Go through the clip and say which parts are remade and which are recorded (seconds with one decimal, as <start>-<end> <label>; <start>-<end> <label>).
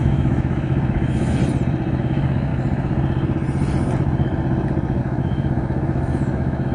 0.0-1.4 remade; 1.4-2.0 recorded; 2.0-2.5 remade; 2.5-5.0 recorded; 5.0-6.7 remade